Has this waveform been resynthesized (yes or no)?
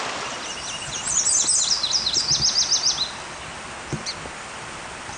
no